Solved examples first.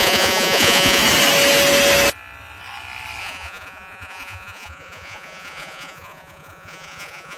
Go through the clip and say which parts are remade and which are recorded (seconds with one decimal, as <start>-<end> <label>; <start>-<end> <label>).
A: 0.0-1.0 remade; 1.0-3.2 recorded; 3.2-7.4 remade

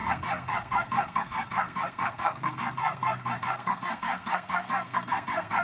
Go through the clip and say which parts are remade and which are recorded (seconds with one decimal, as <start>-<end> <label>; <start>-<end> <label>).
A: 0.0-5.6 remade

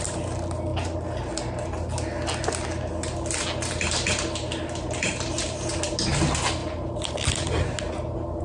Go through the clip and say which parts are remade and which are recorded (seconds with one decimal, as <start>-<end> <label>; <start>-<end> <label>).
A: 0.0-8.4 recorded

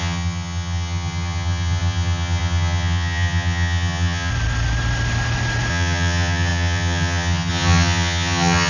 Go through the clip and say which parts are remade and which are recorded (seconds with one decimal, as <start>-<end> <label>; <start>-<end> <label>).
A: 0.0-4.3 remade; 4.3-5.7 recorded; 5.7-8.7 remade

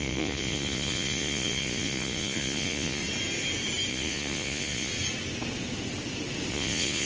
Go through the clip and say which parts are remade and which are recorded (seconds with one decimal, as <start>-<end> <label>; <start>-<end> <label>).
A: 0.0-3.0 remade; 3.0-3.9 recorded; 3.9-4.9 remade; 4.9-6.5 recorded; 6.5-7.1 remade